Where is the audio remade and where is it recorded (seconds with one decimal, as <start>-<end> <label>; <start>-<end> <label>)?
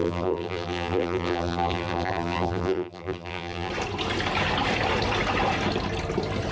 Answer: 0.0-3.7 remade; 3.7-6.5 recorded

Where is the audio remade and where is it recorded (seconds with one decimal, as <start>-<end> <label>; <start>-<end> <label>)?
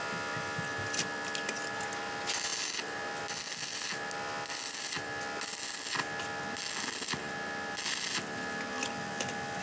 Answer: 0.0-9.6 recorded